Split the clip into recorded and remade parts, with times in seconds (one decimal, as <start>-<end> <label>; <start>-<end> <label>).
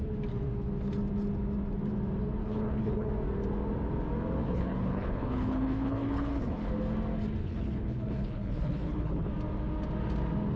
0.0-2.4 recorded; 2.4-3.1 remade; 3.1-4.4 recorded; 4.4-6.7 remade; 6.7-7.4 recorded; 7.4-9.3 remade; 9.3-10.6 recorded